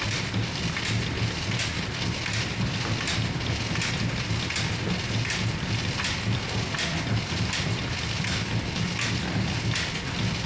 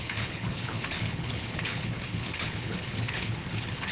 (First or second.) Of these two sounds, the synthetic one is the second